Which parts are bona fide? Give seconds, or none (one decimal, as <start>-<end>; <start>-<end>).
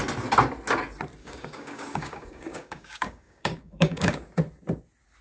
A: 0.0-1.2; 4.3-5.2